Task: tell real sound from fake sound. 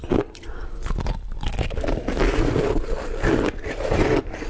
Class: real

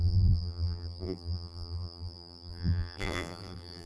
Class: fake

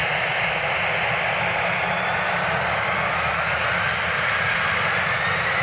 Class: real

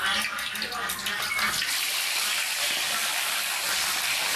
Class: real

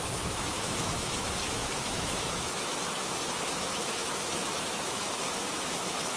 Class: fake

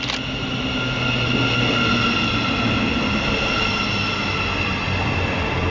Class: real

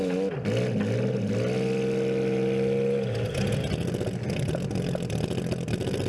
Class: real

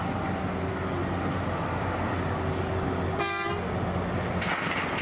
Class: real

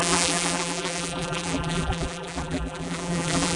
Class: fake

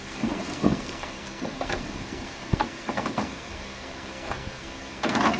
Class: fake